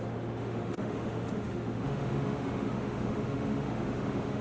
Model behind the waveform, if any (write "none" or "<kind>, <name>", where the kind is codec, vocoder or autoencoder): autoencoder, DAC-VAE